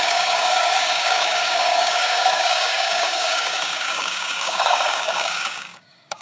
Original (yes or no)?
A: no